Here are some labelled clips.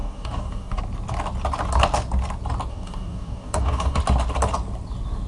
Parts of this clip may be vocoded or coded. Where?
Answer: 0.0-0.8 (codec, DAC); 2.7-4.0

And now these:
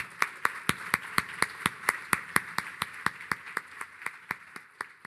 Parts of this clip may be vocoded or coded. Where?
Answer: 2.0-2.5 (vocoder, BigVGAN v2)

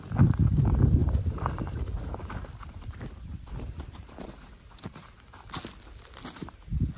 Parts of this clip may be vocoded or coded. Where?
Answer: 1.0-5.2 (vocoder, BigVGAN v2)

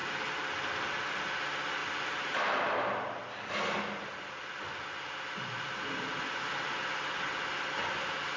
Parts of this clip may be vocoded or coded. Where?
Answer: none

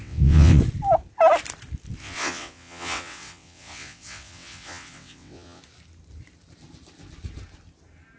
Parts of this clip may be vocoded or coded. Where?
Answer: 0.0-0.6 (vocoder, WaveNeXt); 2.0-5.6